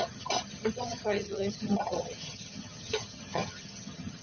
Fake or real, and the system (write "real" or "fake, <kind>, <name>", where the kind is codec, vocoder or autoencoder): fake, vocoder, HiFi-GAN